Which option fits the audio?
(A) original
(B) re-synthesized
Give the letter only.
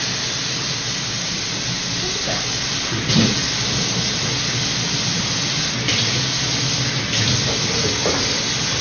A